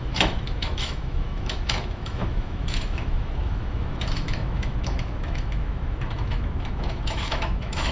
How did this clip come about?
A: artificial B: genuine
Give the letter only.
A